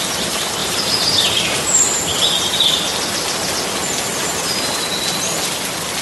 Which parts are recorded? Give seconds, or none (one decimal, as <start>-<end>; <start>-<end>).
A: 0.0-0.6; 1.8-4.1; 4.9-6.0